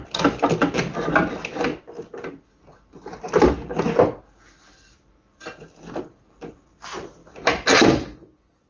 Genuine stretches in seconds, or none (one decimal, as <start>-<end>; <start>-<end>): 0.0-8.7